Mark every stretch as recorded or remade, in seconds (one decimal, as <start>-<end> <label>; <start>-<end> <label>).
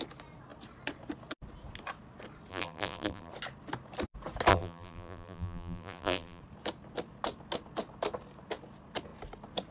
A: 0.0-2.5 recorded; 2.5-3.3 remade; 3.3-4.5 recorded; 4.5-6.4 remade; 6.4-9.7 recorded